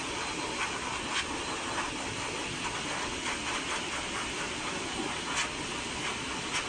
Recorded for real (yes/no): yes